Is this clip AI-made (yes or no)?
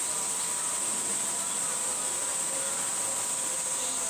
no